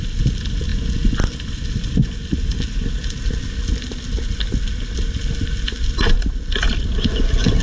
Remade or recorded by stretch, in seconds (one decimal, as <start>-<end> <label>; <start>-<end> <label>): 0.0-7.6 recorded